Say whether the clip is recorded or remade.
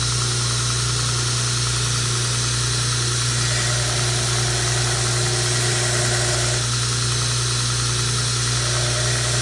recorded